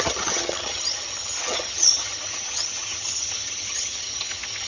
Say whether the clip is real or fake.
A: fake